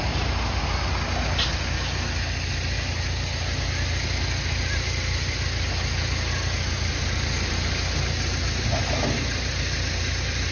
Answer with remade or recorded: recorded